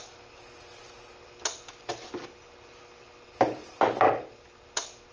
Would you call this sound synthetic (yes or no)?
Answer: no